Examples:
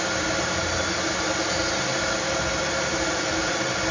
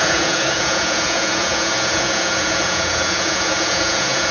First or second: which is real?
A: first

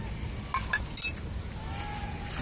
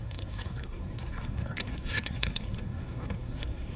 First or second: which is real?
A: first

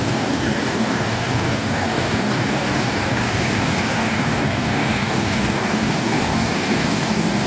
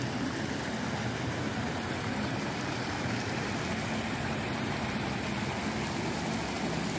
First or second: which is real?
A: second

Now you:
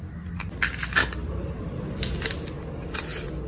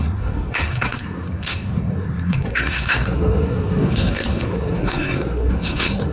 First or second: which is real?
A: first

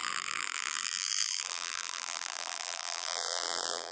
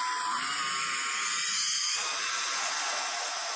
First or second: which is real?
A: second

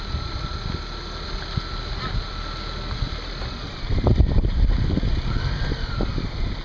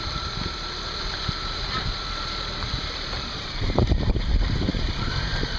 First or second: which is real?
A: first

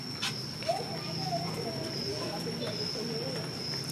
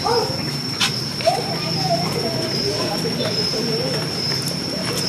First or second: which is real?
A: first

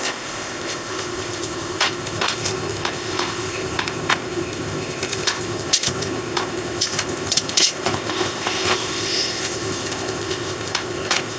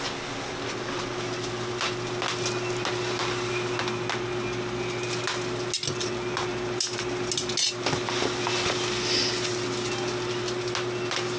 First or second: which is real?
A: second